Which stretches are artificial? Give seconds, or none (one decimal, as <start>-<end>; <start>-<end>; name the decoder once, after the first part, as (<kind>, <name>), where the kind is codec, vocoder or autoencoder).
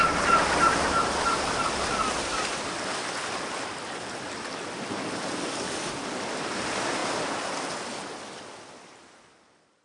none